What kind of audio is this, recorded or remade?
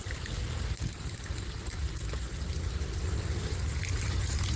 recorded